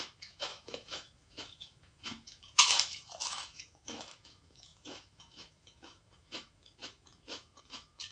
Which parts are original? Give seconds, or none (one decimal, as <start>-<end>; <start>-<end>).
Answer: none